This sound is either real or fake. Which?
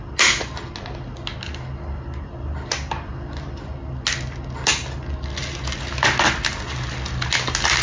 real